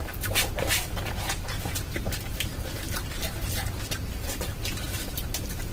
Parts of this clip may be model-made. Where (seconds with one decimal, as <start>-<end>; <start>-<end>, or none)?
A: 0.0-2.5; 3.2-4.6; 5.3-5.7